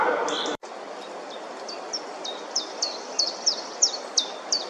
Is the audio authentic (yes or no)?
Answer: no